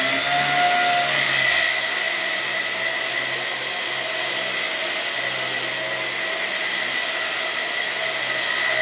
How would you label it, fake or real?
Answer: real